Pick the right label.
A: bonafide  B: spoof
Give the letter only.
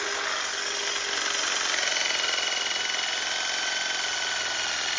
A